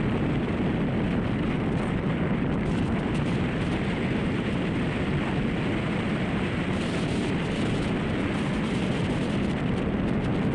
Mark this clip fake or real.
real